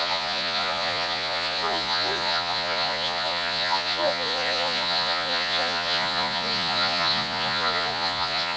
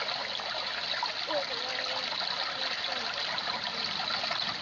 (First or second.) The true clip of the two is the second